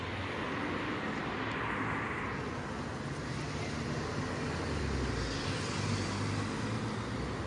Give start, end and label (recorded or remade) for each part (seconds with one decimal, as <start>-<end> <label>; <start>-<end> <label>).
0.0-7.5 recorded